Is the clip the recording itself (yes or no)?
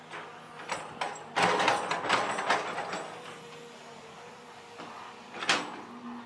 yes